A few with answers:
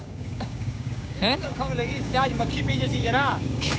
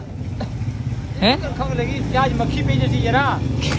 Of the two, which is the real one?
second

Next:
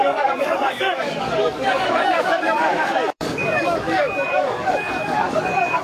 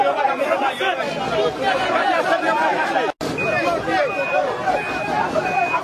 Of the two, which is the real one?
second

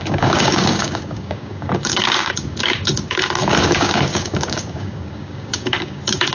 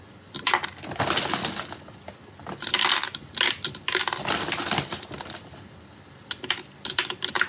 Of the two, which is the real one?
second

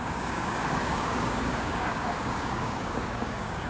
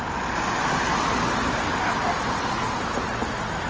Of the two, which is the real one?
second